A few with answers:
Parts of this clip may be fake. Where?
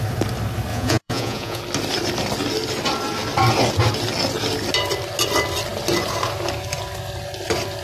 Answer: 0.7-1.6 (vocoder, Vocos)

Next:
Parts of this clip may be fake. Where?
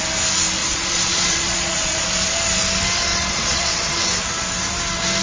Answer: 0.6-2.3 (vocoder, Vocos); 3.1-4.0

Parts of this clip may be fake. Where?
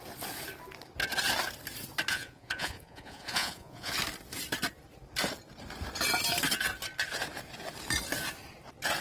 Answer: 2.1-3.9 (vocoder, Vocos)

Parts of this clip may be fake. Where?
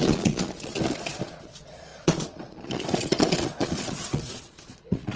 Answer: 0.0-5.2 (vocoder, Vocos)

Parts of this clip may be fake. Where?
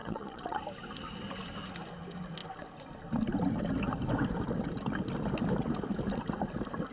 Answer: 0.0-0.6 (vocoder, Vocos)